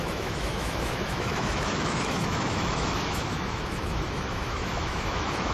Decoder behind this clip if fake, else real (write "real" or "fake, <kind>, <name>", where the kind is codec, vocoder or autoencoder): fake, autoencoder, DAC-VAE